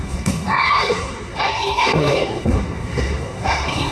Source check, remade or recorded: remade